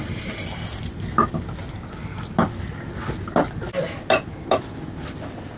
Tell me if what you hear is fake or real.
real